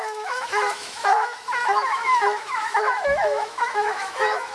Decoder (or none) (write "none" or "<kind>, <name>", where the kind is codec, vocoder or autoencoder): autoencoder, DAC-VAE